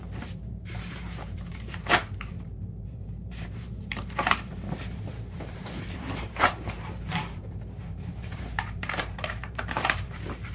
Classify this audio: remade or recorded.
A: remade